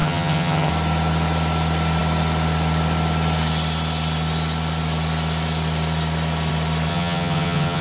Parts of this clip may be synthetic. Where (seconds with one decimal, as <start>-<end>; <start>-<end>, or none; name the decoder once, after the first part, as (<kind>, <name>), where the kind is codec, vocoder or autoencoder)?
0.0-0.7 (vocoder, HiFi-GAN); 6.9-7.8